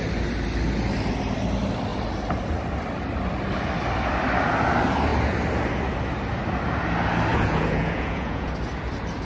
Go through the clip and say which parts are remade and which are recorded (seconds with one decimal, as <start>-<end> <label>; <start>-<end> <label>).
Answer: 0.0-7.3 recorded; 7.3-8.5 remade; 8.5-9.2 recorded